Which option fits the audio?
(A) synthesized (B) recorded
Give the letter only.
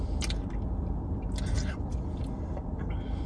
B